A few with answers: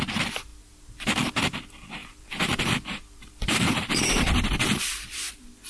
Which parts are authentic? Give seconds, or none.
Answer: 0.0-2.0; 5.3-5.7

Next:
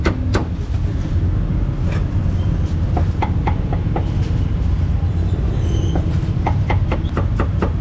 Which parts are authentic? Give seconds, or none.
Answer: 0.0-7.8

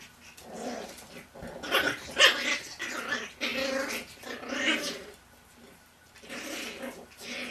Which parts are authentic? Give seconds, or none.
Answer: 0.0-7.5

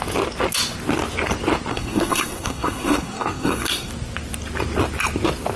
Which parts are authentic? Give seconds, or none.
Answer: 0.0-1.7; 3.9-5.6

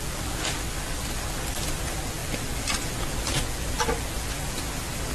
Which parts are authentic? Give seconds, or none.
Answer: 0.0-5.1

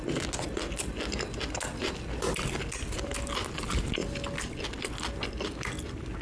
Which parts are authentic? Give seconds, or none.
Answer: 0.0-6.2